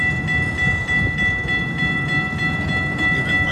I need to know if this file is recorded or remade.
recorded